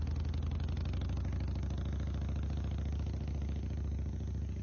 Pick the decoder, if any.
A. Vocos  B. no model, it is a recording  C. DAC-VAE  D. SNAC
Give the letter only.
B